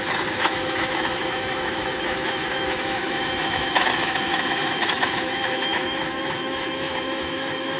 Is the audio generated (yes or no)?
yes